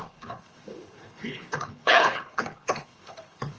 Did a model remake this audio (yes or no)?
yes